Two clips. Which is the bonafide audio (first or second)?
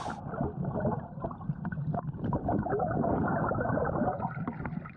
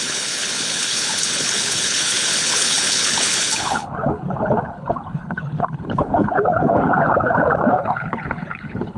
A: first